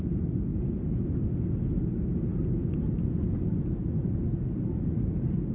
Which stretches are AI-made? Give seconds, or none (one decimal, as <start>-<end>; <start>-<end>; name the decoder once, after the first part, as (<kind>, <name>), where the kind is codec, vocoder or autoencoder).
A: none